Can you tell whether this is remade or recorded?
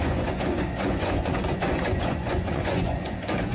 remade